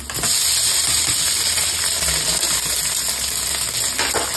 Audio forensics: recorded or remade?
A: recorded